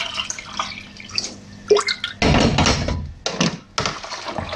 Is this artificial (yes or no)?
no